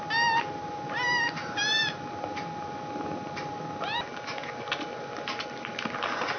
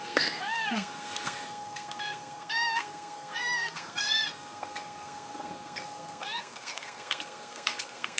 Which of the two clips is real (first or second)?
first